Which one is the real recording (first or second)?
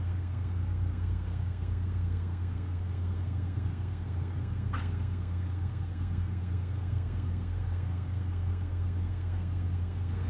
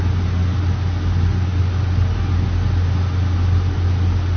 second